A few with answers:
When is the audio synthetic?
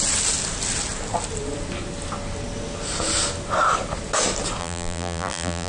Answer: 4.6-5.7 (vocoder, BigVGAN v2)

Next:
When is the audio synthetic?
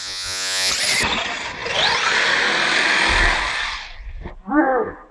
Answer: 0.0-0.7 (vocoder, Vocos)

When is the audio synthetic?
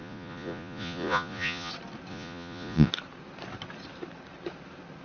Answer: 0.0-1.7 (vocoder, Vocos); 2.1-2.9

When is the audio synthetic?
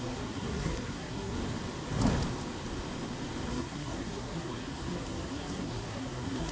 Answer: 0.0-1.4 (codec, SNAC); 3.5-6.5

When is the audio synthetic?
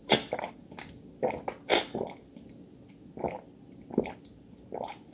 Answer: none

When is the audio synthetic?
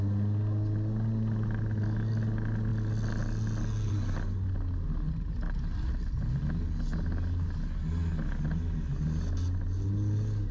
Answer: none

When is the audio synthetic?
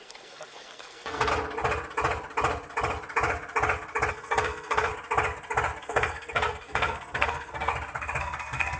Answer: 0.0-1.3 (codec, SNAC); 4.1-4.9; 5.8-7.7; 8.2-8.8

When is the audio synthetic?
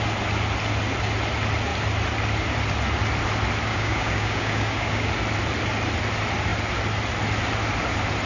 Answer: 3.7-5.1 (codec, DAC)